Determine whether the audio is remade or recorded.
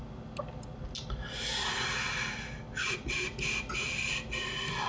recorded